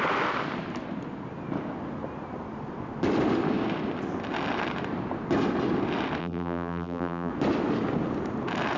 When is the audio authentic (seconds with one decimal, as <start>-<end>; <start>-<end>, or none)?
0.0-6.2; 7.3-8.8